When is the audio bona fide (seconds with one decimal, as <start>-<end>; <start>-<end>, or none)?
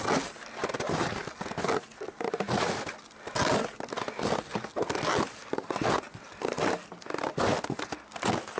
0.0-8.6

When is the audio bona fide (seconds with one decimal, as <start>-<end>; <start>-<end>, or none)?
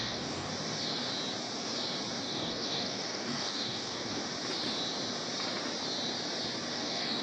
0.5-2.2; 4.2-6.7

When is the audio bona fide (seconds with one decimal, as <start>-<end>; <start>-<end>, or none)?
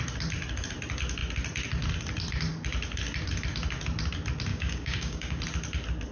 0.0-4.5; 5.4-6.1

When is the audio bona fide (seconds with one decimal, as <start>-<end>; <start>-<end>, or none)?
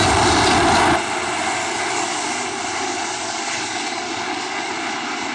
0.0-1.6; 4.7-5.3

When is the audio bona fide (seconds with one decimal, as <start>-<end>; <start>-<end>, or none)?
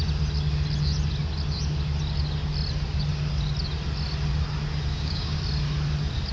0.0-4.9; 5.4-6.3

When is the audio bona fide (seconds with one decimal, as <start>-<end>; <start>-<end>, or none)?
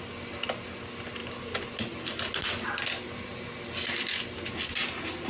0.0-5.3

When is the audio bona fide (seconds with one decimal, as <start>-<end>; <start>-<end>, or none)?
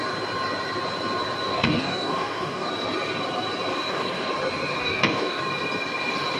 0.0-1.5; 2.7-3.7; 4.3-4.8; 5.4-6.4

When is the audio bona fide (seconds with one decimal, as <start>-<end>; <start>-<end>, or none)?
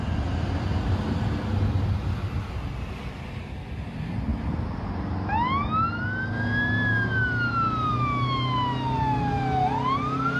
0.0-10.4